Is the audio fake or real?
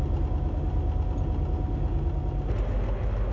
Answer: real